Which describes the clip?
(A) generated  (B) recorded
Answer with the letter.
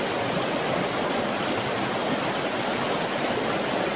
B